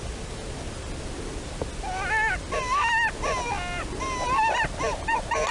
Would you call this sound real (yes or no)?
yes